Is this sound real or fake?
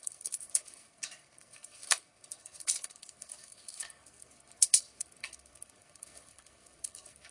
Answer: fake